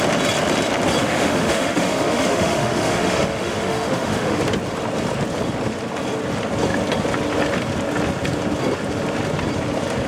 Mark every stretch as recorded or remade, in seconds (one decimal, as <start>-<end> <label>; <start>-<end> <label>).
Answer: 0.0-1.0 recorded; 1.0-4.4 remade; 4.4-10.1 recorded